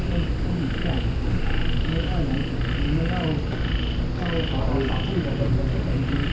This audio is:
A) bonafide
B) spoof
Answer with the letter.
A